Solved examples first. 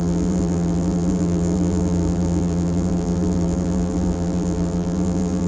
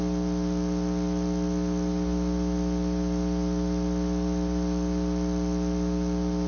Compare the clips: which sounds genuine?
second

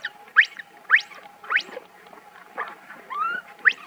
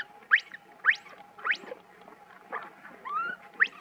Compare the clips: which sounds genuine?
second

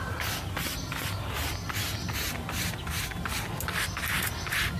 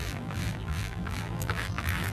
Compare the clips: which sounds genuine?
first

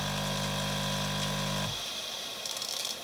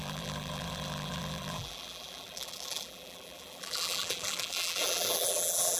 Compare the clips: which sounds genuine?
first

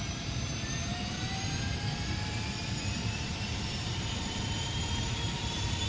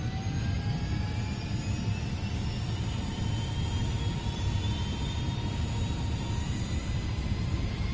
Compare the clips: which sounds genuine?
second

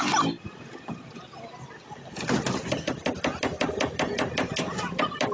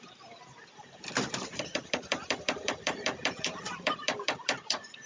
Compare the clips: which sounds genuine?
first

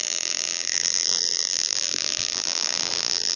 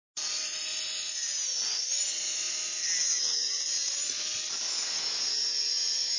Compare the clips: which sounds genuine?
second